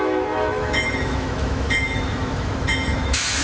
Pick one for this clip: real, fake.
fake